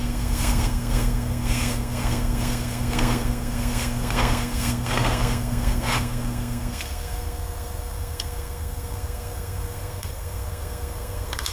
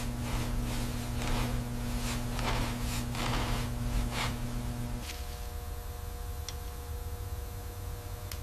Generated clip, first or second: first